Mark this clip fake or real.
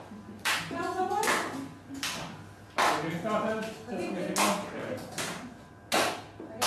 real